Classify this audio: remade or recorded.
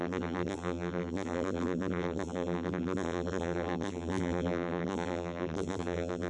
remade